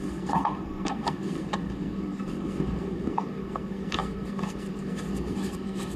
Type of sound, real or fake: fake